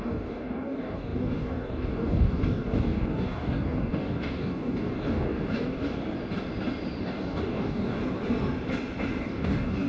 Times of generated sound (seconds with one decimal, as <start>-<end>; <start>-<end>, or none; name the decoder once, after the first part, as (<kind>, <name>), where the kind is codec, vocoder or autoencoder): 0.0-6.0 (codec, DAC); 7.0-8.0; 9.2-9.9